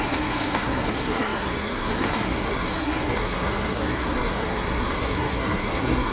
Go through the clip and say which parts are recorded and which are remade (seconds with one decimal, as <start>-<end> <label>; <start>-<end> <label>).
0.0-6.1 remade